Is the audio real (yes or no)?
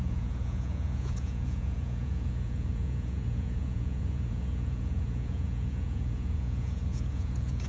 no